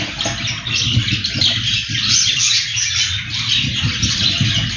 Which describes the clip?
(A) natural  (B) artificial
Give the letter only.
A